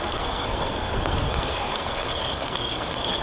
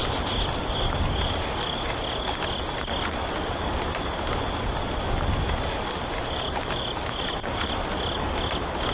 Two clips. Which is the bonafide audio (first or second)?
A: second